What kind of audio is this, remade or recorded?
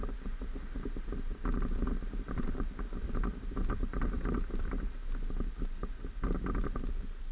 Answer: recorded